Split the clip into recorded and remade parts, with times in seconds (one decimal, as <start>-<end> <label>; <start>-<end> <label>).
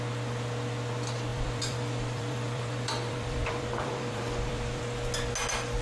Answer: 0.0-1.3 recorded; 1.3-4.8 remade; 4.8-5.8 recorded